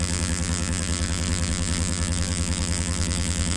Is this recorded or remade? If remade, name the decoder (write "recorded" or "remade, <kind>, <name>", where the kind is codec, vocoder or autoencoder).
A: remade, vocoder, BigVGAN v2